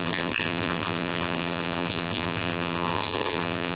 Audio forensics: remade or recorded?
remade